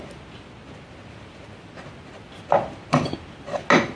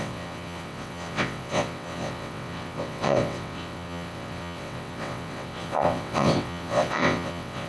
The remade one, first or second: second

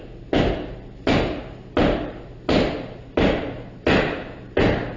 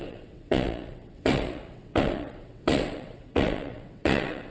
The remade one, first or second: second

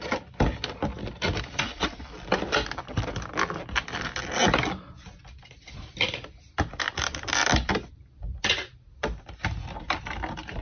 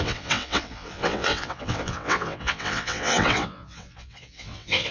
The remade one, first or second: second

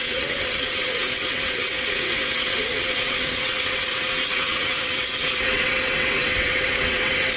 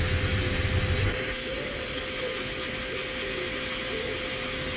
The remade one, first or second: first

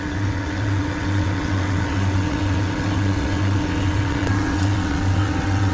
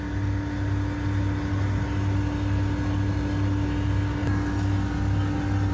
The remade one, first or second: first